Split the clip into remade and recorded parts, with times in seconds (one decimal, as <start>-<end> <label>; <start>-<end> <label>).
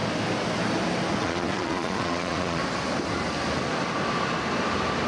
0.0-1.2 recorded; 1.2-2.6 remade; 2.6-5.1 recorded